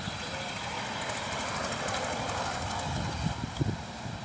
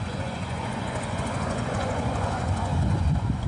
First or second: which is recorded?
first